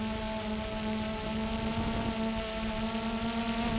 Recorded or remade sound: recorded